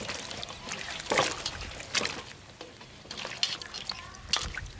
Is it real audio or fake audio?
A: real